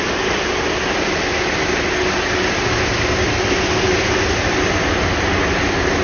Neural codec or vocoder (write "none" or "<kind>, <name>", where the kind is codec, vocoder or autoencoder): none